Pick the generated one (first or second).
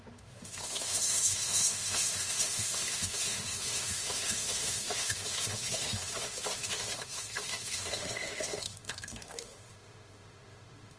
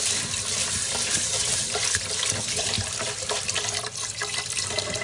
first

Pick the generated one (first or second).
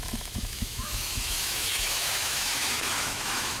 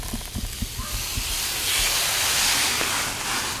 first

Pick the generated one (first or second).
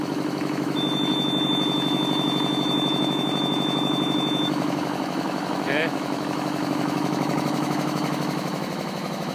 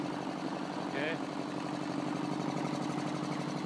first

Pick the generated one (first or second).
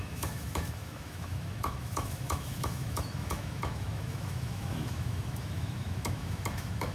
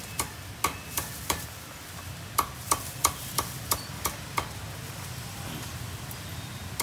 first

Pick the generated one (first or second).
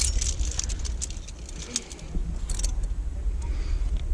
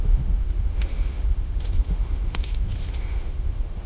second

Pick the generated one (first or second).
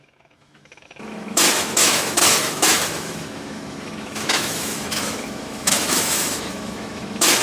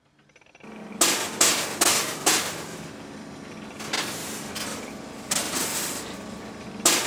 first